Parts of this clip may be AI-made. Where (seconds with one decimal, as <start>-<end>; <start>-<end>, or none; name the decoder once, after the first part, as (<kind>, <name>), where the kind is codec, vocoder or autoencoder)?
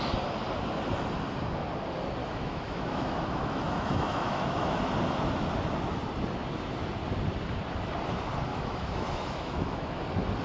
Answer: 2.2-4.8 (autoencoder, DAC-VAE); 8.5-10.0